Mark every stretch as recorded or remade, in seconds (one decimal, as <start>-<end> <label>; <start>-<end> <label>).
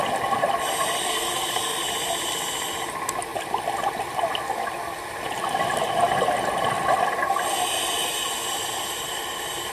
0.0-1.0 recorded; 1.0-1.8 remade; 1.8-9.7 recorded